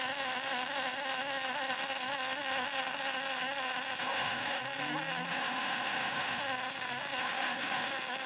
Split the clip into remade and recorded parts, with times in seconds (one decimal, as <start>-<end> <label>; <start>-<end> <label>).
0.0-4.0 recorded; 4.0-4.6 remade; 4.6-5.3 recorded; 5.3-6.4 remade; 6.4-7.2 recorded; 7.2-7.9 remade; 7.9-8.3 recorded